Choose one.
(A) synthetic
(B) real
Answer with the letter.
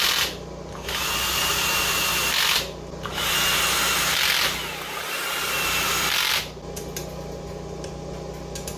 B